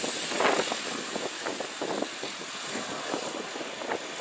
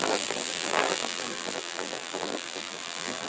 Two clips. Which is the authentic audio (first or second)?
first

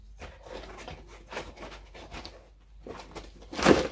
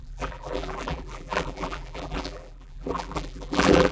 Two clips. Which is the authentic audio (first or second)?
first